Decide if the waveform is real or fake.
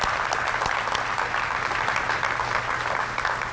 real